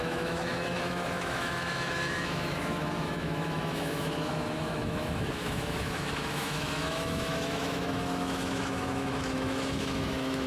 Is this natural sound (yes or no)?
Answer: no